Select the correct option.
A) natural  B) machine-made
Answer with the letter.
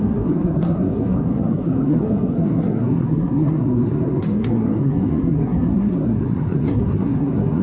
B